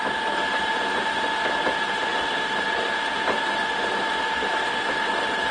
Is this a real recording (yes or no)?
yes